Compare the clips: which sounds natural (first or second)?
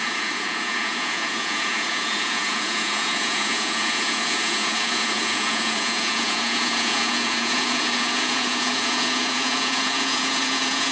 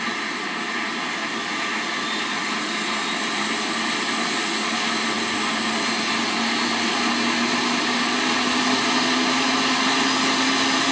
second